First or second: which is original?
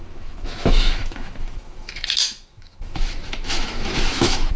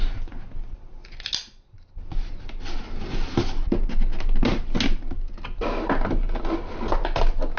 second